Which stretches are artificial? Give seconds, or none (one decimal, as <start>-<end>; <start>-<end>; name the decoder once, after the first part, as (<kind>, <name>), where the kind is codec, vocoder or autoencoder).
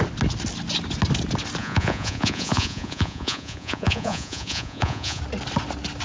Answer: 1.6-5.2 (vocoder, Vocos)